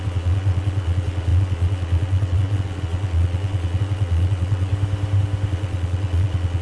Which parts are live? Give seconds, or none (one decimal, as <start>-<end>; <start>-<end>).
4.7-5.5